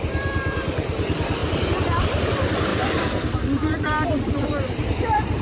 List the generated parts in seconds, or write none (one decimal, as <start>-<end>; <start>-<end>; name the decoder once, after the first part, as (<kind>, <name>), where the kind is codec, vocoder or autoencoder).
0.0-1.4 (vocoder, BigVGAN v2); 2.0-2.7; 3.7-5.4